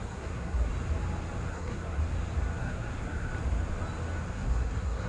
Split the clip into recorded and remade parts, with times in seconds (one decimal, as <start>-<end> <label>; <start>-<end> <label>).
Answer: 0.0-0.7 remade; 0.7-1.5 recorded; 1.5-2.0 remade; 2.0-2.6 recorded; 2.6-3.3 remade; 3.3-4.3 recorded; 4.3-5.1 remade

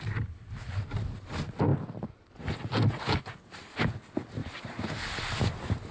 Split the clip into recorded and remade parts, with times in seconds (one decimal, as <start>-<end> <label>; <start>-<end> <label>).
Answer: 0.0-4.4 recorded; 4.4-5.3 remade; 5.3-5.9 recorded

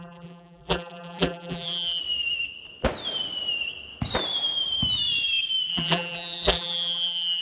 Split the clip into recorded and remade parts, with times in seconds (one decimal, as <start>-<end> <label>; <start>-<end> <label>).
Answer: 0.0-2.0 remade; 2.0-5.7 recorded; 5.7-7.4 remade

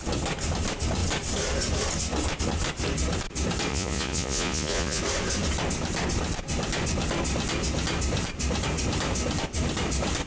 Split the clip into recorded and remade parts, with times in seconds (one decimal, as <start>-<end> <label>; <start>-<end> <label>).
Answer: 0.0-3.7 recorded; 3.7-5.0 remade; 5.0-10.3 recorded

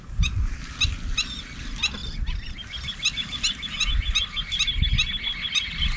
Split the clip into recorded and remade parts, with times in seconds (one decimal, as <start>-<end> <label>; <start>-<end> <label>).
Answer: 0.0-6.0 recorded

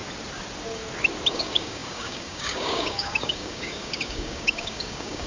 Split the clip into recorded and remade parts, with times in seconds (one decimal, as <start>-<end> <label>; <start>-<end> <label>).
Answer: 0.0-1.3 recorded; 1.3-5.3 remade

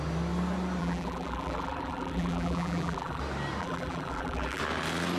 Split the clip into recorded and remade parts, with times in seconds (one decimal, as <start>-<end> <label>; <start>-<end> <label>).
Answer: 0.0-0.8 recorded; 0.8-3.2 remade; 3.2-3.6 recorded; 3.6-4.6 remade; 4.6-5.2 recorded

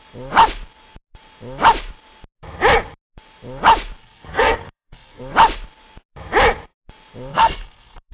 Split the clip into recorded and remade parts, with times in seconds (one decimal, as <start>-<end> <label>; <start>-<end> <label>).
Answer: 0.0-4.0 recorded; 4.0-5.2 remade; 5.2-7.3 recorded; 7.3-8.1 remade